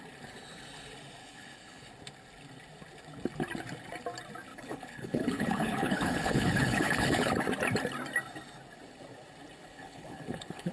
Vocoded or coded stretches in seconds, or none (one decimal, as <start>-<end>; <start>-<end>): 1.2-1.9; 4.5-7.3; 9.6-10.7